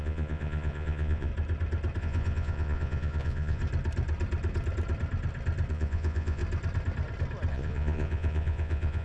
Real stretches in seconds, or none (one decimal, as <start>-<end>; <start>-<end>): 1.3-2.0; 3.6-5.7; 6.4-7.5